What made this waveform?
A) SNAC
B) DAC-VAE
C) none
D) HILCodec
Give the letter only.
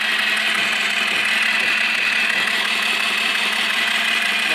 C